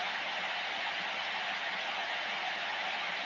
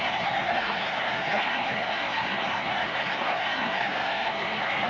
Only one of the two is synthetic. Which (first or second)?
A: second